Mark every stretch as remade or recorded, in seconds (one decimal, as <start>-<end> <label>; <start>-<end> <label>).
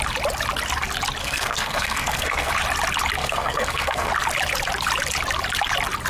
0.0-1.2 recorded; 1.2-2.5 remade; 2.5-3.2 recorded; 3.2-4.1 remade; 4.1-6.1 recorded